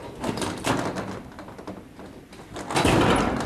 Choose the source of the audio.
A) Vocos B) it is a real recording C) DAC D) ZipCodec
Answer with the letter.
B